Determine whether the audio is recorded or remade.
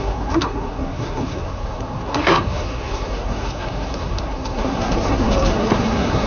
remade